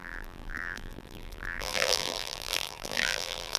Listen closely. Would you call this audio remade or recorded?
remade